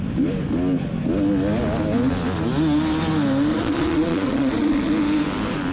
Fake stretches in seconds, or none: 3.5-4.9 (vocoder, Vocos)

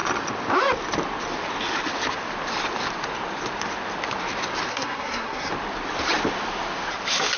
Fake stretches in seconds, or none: 4.7-5.5 (codec, SNAC)